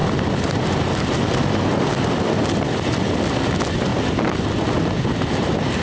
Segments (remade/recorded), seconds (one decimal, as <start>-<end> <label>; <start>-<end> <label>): 0.0-5.8 recorded